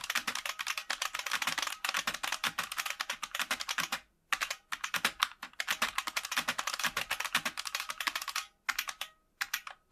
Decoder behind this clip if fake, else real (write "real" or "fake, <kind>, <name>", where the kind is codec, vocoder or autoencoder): real